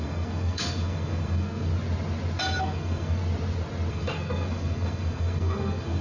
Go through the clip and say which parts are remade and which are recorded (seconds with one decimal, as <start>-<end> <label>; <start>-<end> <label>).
0.0-1.7 remade; 1.7-2.6 recorded; 2.6-3.2 remade; 3.2-3.9 recorded; 3.9-6.0 remade